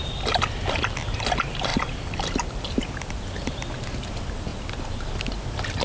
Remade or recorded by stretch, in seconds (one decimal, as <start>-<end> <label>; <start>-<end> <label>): 0.0-5.8 recorded